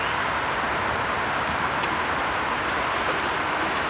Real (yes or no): yes